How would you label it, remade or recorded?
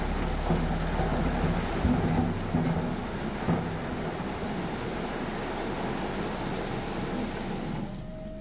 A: recorded